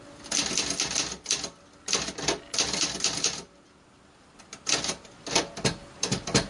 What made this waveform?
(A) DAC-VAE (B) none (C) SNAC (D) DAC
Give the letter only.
B